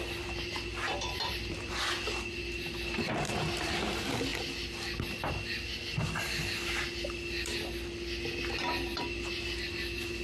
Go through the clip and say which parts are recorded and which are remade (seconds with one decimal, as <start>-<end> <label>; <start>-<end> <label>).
0.0-0.9 recorded; 0.9-1.7 remade; 1.7-10.2 recorded